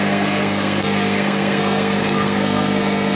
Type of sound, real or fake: fake